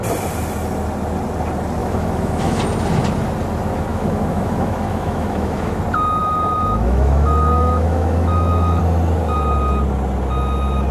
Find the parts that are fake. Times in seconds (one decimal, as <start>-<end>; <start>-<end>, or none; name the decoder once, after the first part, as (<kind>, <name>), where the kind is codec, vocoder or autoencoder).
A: 1.8-2.6 (autoencoder, DAC-VAE); 3.9-5.8; 6.2-8.8